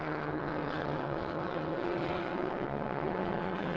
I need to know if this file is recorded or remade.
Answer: remade